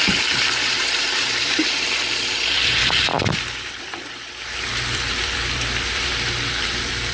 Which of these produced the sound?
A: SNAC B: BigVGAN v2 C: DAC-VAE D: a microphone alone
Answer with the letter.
B